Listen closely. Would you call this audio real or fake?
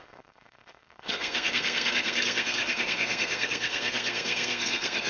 fake